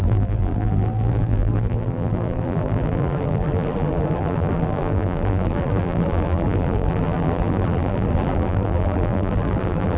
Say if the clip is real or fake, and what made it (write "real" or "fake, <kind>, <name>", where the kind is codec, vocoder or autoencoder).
fake, vocoder, BigVGAN v2